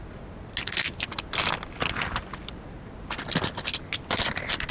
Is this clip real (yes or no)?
yes